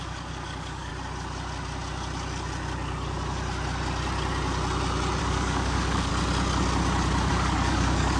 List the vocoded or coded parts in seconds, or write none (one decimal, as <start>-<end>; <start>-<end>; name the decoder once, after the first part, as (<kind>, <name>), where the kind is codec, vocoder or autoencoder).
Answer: 0.0-0.9 (codec, DAC); 5.2-6.1; 7.3-8.2